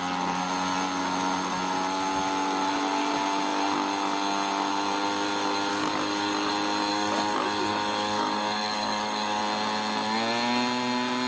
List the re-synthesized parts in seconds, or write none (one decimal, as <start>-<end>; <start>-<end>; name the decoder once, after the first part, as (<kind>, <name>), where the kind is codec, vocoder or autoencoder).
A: 5.7-6.5 (codec, DAC); 6.9-9.4